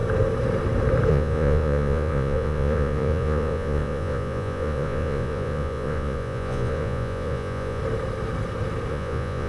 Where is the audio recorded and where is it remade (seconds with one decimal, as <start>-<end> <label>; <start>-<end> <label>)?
0.0-1.1 recorded; 1.1-7.8 remade; 7.8-8.9 recorded; 8.9-9.5 remade